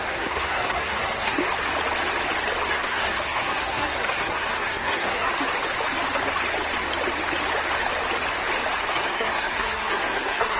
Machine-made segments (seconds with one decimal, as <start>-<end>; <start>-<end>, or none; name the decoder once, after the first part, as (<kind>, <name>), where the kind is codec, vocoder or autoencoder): 0.0-1.4 (codec, SNAC); 2.7-5.3; 8.9-10.6